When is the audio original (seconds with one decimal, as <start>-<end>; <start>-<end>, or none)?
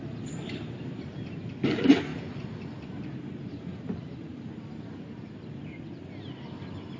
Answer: 0.0-2.1; 5.8-7.0